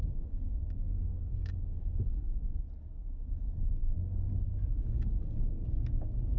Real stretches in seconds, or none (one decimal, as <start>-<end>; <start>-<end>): 2.4-4.7; 5.8-6.4